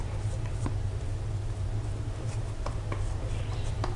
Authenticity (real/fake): fake